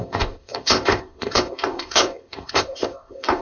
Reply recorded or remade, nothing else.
remade